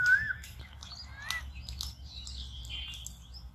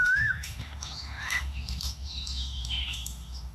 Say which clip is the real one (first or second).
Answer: first